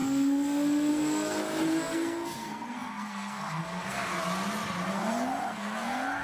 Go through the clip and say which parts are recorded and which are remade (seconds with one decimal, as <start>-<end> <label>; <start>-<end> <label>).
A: 0.0-4.1 remade; 4.1-4.9 recorded; 4.9-6.2 remade